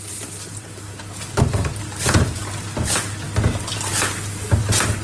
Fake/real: real